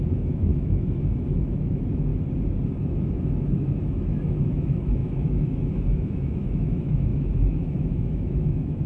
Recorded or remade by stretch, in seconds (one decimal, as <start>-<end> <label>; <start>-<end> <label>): 0.0-2.1 remade; 2.1-2.9 recorded; 2.9-8.9 remade